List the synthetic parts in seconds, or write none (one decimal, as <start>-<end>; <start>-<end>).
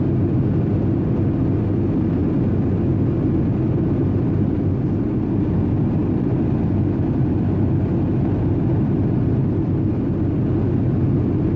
none